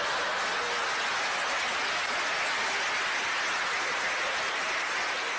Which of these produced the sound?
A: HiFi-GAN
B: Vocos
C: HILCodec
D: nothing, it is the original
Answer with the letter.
D